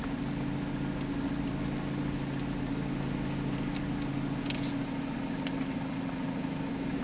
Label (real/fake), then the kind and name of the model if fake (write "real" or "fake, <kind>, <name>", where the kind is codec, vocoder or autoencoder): real